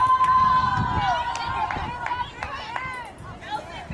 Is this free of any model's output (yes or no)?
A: yes